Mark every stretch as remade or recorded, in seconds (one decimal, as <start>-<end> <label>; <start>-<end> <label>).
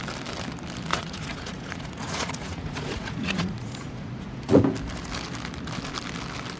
0.0-0.9 recorded; 0.9-4.6 remade; 4.6-6.6 recorded